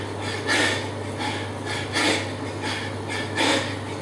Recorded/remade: recorded